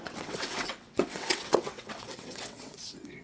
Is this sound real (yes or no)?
no